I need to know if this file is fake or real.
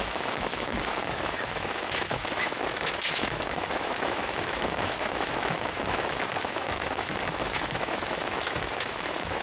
fake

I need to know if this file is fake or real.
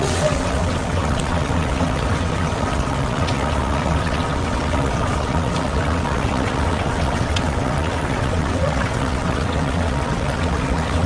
fake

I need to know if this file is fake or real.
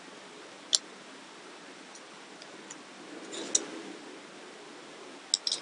real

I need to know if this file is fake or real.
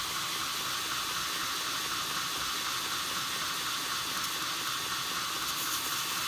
real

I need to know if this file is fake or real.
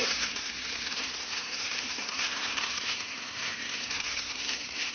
fake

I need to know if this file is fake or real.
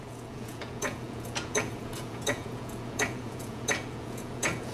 fake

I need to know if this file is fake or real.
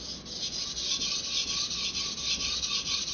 real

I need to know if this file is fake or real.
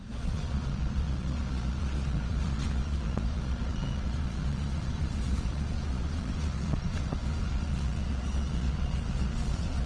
fake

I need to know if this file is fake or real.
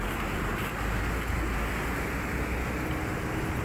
real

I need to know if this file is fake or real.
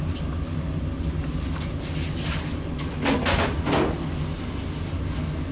real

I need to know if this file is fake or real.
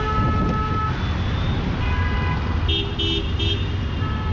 real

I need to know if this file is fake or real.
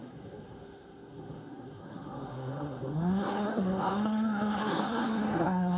fake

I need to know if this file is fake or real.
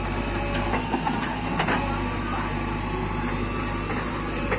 real